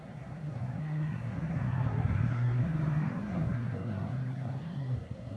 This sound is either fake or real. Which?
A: fake